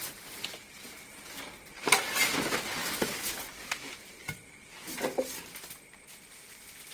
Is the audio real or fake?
real